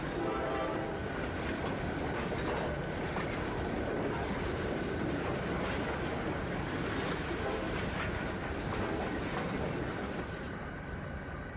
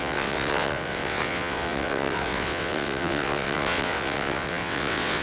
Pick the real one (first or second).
first